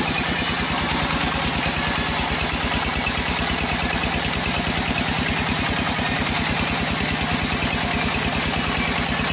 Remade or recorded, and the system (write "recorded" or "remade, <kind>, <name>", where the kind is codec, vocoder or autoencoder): recorded